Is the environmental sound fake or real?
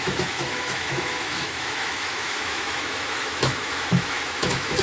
fake